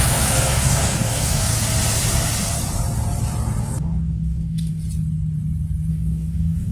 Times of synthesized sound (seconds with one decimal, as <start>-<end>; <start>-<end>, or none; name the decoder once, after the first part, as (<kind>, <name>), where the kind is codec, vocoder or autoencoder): 0.0-1.5 (codec, DAC); 3.6-4.8; 5.9-6.7